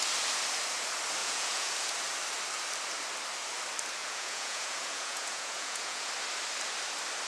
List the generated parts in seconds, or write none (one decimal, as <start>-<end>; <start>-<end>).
1.2-1.9; 4.0-6.1